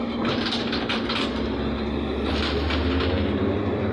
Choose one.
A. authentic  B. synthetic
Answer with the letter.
A